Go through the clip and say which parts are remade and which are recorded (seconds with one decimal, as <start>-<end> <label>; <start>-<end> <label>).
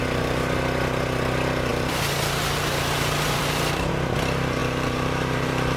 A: 0.0-1.7 recorded; 1.7-3.9 remade; 3.9-4.6 recorded; 4.6-5.8 remade